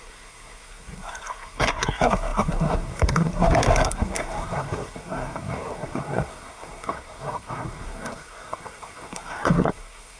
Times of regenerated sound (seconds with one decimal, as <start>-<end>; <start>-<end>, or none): 0.0-10.2